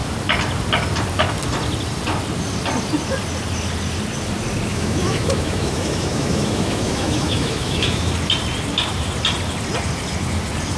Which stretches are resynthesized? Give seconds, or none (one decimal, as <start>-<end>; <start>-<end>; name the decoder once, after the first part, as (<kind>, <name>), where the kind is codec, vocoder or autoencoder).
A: 4.7-8.1 (autoencoder, DAC-VAE)